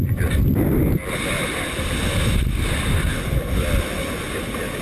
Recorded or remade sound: recorded